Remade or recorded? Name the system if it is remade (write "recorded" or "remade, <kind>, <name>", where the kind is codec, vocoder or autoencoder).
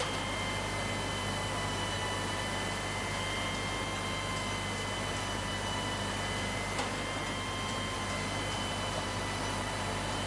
recorded